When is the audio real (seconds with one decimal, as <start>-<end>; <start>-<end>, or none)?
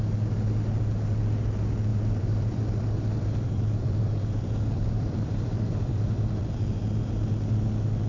0.0-1.9; 6.8-8.1